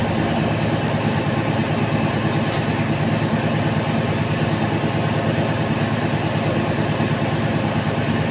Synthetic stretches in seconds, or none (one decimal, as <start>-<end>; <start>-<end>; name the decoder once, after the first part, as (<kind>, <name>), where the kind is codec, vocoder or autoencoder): none